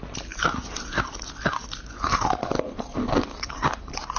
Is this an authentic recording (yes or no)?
yes